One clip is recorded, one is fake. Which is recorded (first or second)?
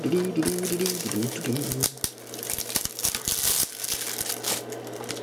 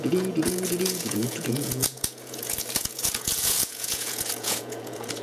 first